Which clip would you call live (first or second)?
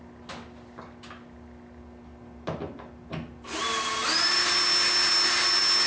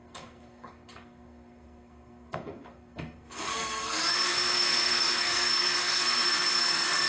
first